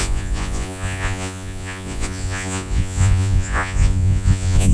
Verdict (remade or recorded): remade